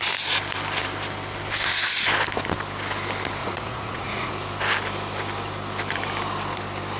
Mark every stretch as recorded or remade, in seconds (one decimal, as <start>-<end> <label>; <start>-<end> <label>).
0.0-3.4 recorded; 3.4-4.3 remade; 4.3-7.0 recorded